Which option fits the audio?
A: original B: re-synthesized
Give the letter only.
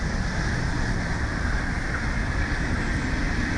A